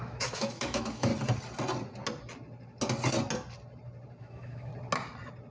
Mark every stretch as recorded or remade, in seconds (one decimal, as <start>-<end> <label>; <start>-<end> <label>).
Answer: 0.0-1.1 remade; 1.1-4.2 recorded; 4.2-4.7 remade; 4.7-5.5 recorded